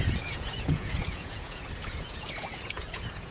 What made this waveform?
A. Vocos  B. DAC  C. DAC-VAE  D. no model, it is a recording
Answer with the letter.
A